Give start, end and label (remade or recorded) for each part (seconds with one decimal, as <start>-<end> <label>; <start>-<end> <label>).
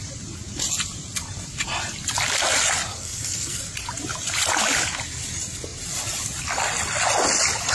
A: 0.0-2.9 recorded; 2.9-3.6 remade; 3.6-7.7 recorded